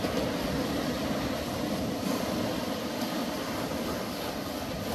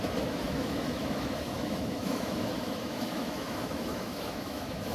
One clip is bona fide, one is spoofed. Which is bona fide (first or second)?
first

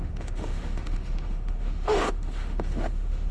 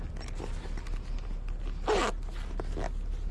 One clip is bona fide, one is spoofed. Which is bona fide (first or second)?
second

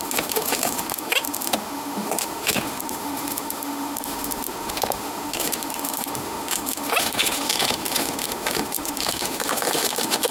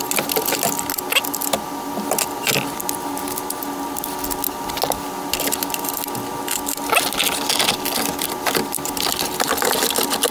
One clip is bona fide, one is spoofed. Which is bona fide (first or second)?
second